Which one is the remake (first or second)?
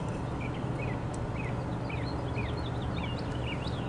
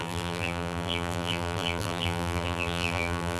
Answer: second